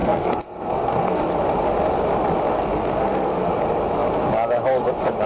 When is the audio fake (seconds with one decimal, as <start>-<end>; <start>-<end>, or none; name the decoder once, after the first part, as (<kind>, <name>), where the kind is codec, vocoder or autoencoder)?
0.0-1.2 (codec, SNAC); 2.5-3.5